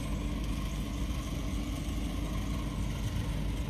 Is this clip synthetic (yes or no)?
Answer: no